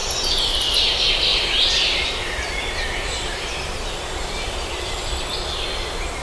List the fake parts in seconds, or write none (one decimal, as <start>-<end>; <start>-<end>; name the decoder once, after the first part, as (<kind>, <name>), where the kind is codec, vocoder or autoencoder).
1.3-5.0 (vocoder, BigVGAN v2)